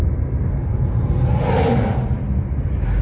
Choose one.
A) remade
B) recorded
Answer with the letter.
B